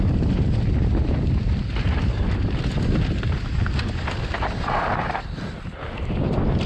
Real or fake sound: real